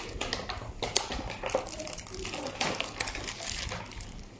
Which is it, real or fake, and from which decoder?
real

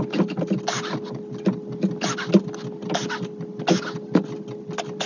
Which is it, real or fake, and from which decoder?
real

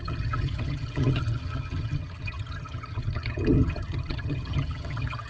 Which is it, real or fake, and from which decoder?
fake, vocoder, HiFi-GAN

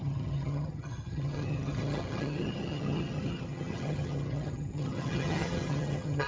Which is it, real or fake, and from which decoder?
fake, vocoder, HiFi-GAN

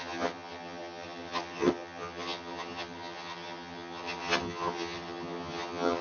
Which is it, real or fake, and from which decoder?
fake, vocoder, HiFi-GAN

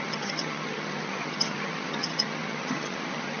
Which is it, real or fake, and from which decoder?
fake, vocoder, HiFi-GAN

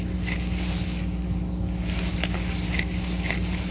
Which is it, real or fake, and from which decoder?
real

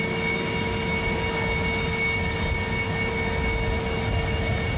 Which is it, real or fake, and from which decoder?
real